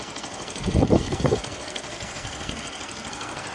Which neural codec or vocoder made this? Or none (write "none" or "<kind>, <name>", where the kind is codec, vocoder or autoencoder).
codec, SNAC